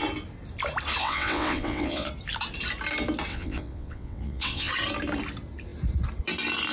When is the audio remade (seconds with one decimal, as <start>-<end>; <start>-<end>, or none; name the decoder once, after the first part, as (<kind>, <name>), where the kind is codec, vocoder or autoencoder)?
1.0-2.1 (vocoder, WaveNeXt); 3.3-4.7